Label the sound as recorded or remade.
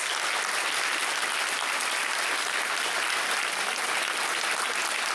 recorded